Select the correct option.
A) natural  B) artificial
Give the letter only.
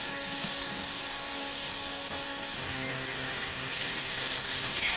B